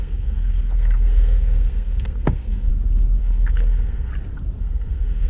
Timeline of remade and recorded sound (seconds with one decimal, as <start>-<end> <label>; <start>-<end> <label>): 0.0-2.7 remade; 2.7-3.2 recorded; 3.2-4.1 remade; 4.1-4.6 recorded; 4.6-5.3 remade